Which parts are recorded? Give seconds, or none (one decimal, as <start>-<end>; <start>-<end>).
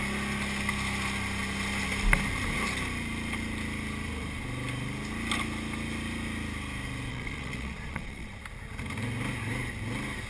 0.0-7.1; 8.4-10.3